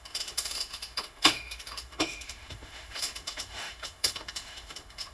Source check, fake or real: fake